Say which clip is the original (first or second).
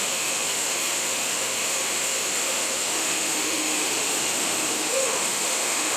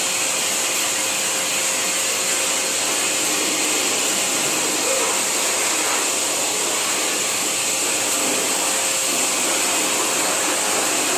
second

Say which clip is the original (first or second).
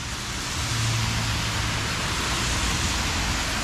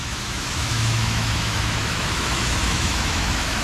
first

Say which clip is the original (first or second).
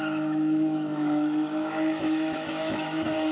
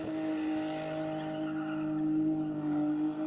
second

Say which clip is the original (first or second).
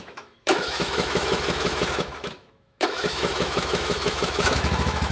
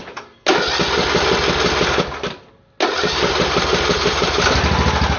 second